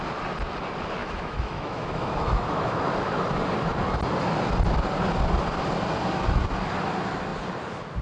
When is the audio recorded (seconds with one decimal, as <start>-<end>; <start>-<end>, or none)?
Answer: 0.0-1.0; 2.8-8.0